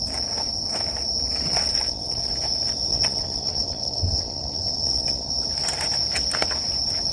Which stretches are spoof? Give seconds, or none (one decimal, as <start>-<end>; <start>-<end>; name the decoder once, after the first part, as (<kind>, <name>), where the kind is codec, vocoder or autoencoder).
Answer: 1.5-2.3 (vocoder, WaveNeXt); 2.9-5.3